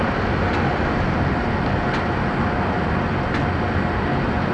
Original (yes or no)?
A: yes